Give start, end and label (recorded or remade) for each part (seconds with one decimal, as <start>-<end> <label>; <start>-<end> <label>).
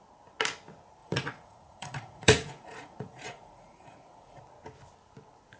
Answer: 0.0-1.0 recorded; 1.0-4.4 remade; 4.4-5.6 recorded